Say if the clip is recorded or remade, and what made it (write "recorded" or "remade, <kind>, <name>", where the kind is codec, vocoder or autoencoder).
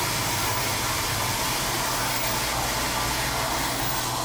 recorded